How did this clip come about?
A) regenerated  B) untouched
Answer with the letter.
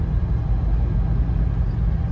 B